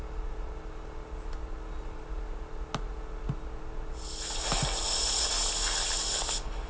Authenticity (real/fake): real